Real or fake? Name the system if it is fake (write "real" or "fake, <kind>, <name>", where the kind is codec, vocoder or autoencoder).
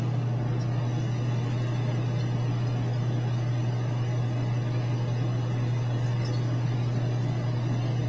real